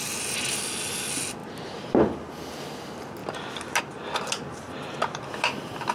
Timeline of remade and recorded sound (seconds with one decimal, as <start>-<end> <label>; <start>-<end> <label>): 0.0-5.9 recorded